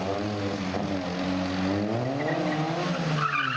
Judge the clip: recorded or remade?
recorded